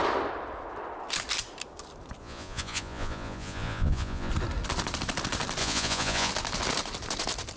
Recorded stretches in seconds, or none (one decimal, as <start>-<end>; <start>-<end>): 0.0-2.2; 4.3-5.6; 6.3-7.6